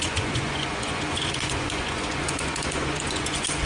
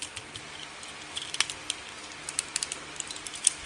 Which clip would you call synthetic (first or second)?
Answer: first